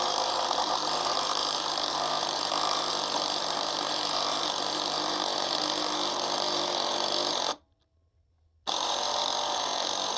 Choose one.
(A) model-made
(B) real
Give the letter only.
B